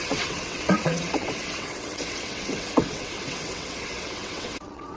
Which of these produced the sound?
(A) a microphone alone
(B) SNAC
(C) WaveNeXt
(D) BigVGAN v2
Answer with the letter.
C